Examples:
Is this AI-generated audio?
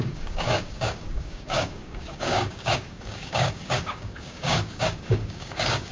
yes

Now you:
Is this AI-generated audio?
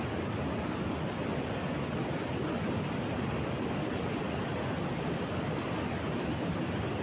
no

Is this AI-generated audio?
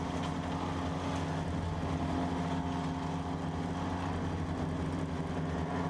no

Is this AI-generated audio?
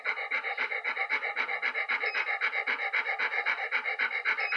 no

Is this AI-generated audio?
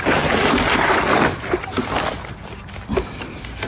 no